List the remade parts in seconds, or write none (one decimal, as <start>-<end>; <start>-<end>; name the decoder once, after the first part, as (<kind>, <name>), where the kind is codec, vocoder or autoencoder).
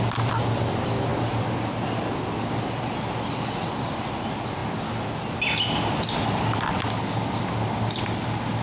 none